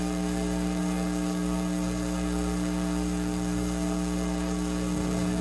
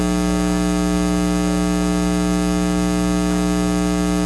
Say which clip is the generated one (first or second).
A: first